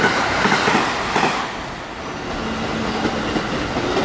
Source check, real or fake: real